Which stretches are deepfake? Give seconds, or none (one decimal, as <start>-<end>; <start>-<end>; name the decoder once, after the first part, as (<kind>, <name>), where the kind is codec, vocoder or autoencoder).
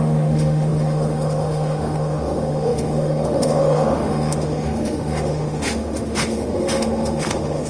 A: 0.0-7.7 (autoencoder, DAC-VAE)